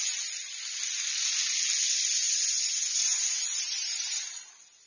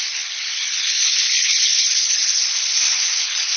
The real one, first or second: first